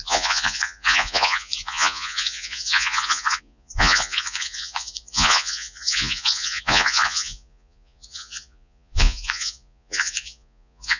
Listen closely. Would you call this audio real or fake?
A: fake